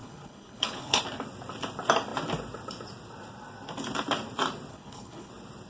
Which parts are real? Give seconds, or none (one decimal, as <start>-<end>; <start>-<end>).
1.0-4.7; 5.3-5.7